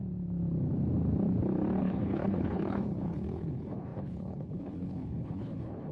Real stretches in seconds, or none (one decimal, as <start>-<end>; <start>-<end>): 0.0-1.8